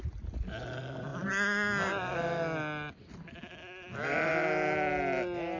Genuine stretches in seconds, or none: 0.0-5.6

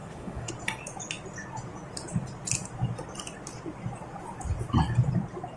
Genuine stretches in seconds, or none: 0.5-5.6

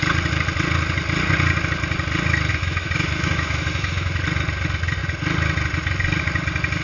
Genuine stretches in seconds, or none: 0.0-2.5; 4.2-6.8

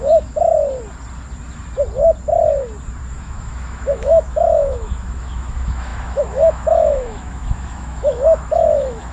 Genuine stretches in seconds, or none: 0.5-3.2

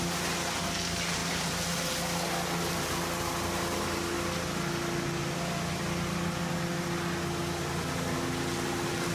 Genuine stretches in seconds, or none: 0.0-9.1

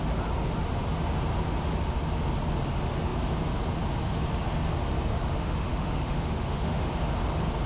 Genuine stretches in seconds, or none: 0.0-5.1; 6.9-7.7